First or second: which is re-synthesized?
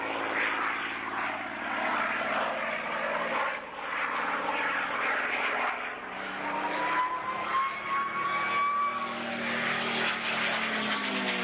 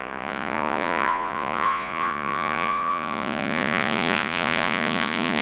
second